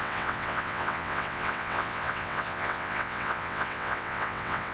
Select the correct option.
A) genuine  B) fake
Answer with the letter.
B